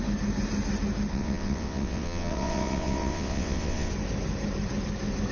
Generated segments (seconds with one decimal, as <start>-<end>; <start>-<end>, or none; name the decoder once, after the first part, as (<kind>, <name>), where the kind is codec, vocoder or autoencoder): 1.1-3.9 (vocoder, WaveNeXt)